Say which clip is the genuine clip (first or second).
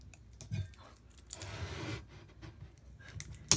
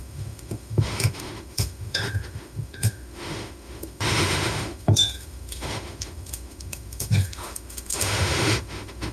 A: first